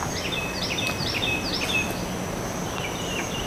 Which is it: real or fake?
real